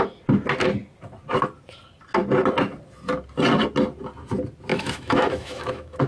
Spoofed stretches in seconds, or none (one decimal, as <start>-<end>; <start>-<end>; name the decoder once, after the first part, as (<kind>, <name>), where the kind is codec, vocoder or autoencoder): 4.7-6.1 (autoencoder, DAC-VAE)